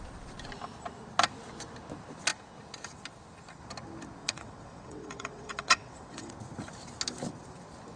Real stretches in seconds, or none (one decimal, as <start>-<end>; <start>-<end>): 0.0-4.2; 6.3-8.0